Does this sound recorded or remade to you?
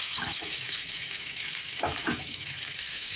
remade